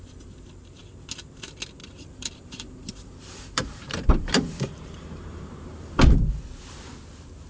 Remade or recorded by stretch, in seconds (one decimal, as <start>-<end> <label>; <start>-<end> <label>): 0.0-1.8 recorded; 1.8-6.3 remade; 6.3-7.5 recorded